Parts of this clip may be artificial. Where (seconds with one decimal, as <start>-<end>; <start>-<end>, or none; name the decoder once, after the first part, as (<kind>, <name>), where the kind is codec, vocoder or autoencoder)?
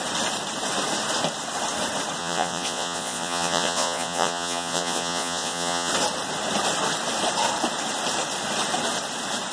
2.2-5.9 (vocoder, Vocos)